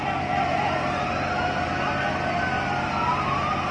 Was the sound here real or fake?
real